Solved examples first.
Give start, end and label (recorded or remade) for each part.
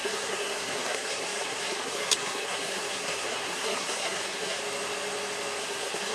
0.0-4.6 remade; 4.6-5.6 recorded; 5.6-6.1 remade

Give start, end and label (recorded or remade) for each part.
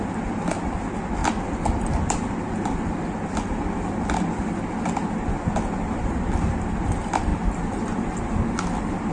0.0-9.1 recorded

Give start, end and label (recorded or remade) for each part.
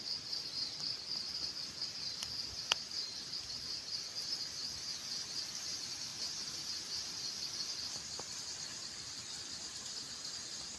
0.0-10.8 recorded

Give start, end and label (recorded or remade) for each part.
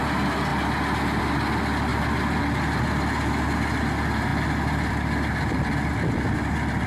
0.0-6.9 recorded